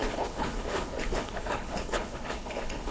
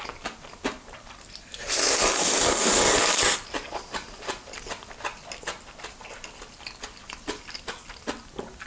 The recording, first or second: second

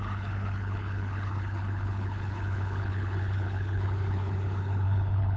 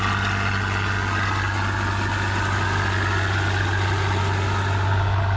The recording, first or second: second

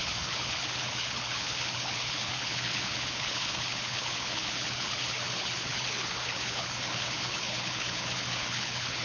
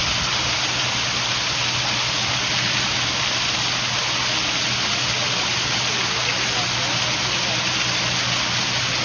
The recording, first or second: second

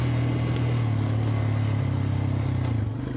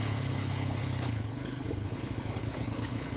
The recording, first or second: first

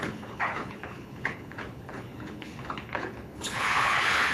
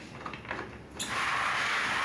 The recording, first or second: second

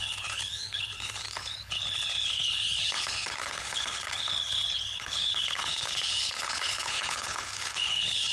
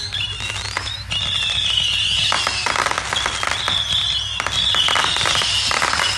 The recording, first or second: second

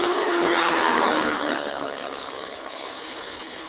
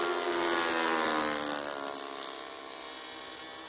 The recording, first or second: second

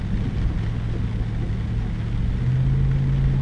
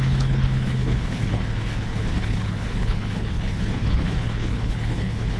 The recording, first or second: first